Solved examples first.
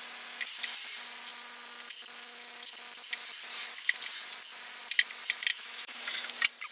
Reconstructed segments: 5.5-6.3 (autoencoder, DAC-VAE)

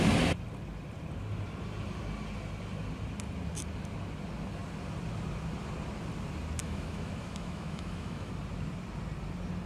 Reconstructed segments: 6.6-8.3 (autoencoder, DAC-VAE)

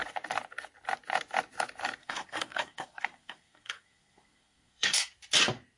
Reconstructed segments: 2.0-5.1 (codec, SNAC)

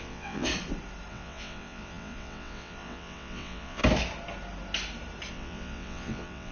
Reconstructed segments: 0.0-0.5 (vocoder, WaveNeXt); 1.1-3.8; 5.3-6.5